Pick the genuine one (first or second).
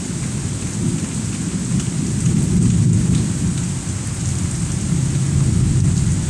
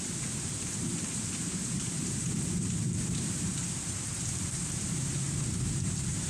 first